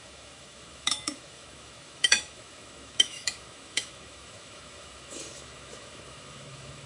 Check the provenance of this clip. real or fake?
fake